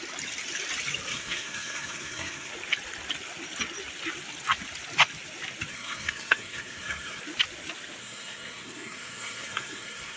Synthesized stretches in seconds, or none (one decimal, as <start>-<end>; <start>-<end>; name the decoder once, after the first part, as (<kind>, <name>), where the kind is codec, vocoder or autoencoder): 1.1-2.5 (codec, SNAC); 5.7-7.2; 8.0-10.2

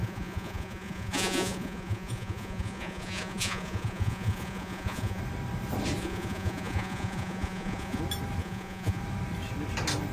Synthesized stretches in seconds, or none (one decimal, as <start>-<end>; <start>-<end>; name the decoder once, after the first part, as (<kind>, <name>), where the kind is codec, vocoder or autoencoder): 0.0-5.2 (vocoder, Vocos); 6.0-8.0; 8.4-9.0

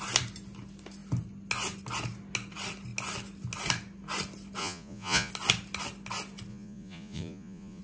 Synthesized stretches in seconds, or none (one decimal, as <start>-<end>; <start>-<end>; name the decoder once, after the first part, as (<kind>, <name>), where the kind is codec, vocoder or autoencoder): 4.6-5.3 (vocoder, Vocos); 6.5-7.8

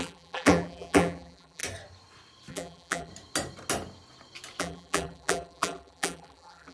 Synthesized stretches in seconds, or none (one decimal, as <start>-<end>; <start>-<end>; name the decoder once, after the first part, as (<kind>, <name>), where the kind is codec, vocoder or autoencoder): 0.0-1.6 (vocoder, BigVGAN v2); 2.5-3.1; 4.6-6.7